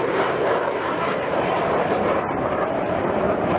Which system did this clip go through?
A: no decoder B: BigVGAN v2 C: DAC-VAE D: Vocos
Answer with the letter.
B